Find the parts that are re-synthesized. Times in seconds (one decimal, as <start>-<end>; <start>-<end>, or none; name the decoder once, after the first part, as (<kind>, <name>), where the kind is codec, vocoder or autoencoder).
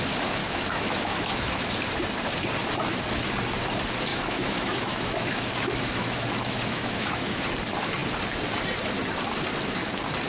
0.4-1.7 (autoencoder, DAC-VAE); 4.1-7.4